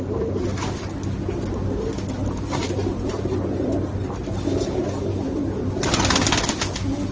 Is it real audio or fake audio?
real